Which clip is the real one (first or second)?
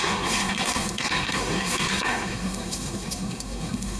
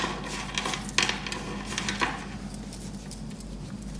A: second